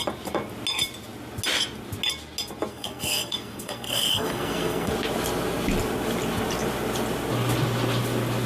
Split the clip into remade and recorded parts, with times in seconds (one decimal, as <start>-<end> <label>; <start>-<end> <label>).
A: 0.0-2.7 recorded; 2.7-4.9 remade; 4.9-8.5 recorded